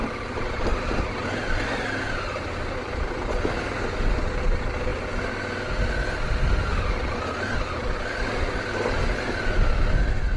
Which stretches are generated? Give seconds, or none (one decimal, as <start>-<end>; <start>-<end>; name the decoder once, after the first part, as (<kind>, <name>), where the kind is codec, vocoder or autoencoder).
none